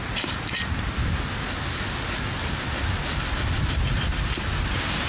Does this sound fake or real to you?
real